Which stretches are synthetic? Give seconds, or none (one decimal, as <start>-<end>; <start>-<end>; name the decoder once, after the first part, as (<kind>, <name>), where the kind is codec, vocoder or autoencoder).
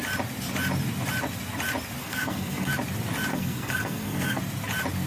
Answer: 2.0-2.7 (codec, SNAC); 3.3-4.4